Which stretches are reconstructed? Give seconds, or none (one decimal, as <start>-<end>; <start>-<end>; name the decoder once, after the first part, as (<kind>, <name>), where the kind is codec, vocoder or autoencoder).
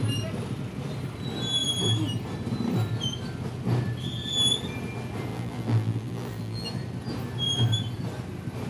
5.3-6.7 (vocoder, BigVGAN v2)